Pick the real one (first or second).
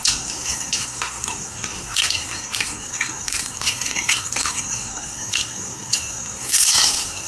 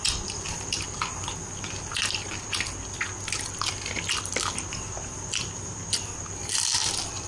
second